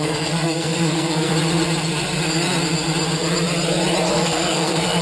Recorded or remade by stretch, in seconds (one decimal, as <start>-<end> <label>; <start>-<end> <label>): 0.0-1.3 remade; 1.3-4.1 recorded; 4.1-5.0 remade